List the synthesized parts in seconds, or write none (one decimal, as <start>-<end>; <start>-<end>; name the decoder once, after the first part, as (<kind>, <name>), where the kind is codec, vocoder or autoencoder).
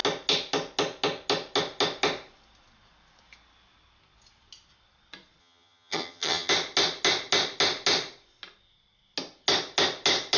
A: 5.4-6.5 (vocoder, HiFi-GAN)